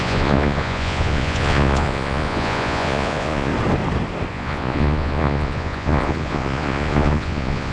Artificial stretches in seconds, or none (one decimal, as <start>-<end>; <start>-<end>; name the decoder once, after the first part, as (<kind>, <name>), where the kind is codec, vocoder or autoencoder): 0.0-3.5 (vocoder, Vocos); 4.3-7.7